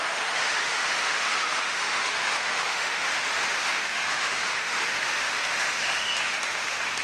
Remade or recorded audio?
remade